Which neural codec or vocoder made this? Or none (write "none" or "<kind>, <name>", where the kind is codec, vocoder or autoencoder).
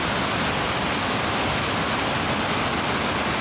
none